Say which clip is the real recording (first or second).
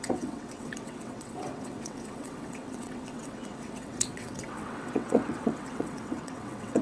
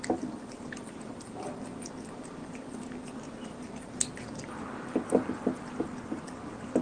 second